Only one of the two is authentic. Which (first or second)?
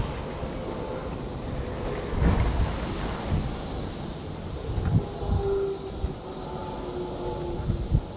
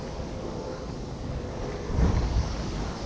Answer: first